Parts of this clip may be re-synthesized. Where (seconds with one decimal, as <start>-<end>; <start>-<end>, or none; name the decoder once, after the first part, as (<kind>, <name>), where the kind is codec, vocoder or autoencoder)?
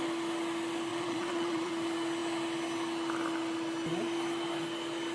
0.9-1.7 (vocoder, Vocos)